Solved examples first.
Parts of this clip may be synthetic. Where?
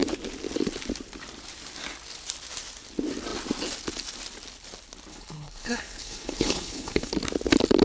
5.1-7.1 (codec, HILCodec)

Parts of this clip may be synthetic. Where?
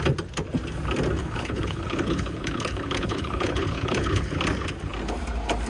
1.2-4.4 (codec, HILCodec)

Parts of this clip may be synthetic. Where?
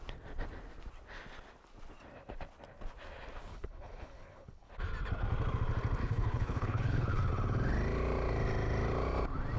3.5-4.7 (codec, HILCodec); 6.0-7.3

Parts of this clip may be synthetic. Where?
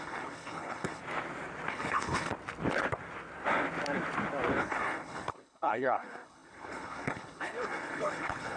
0.0-1.0 (codec, HILCodec); 1.7-2.3; 4.6-8.6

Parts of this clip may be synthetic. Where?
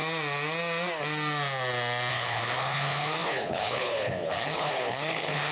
2.1-5.5 (codec, HILCodec)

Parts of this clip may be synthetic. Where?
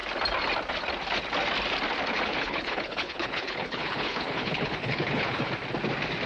2.1-5.5 (codec, HILCodec)